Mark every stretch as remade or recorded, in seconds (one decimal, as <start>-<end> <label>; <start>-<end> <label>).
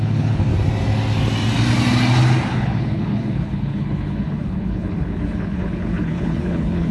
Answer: 0.0-0.5 remade; 0.5-2.5 recorded; 2.5-6.9 remade